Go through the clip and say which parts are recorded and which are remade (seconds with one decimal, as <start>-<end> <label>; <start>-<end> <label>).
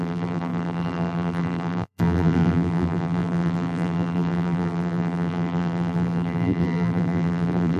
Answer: 0.0-7.8 remade